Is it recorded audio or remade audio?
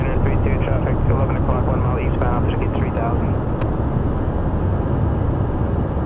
recorded